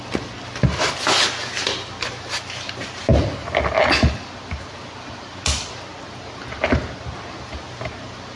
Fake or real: real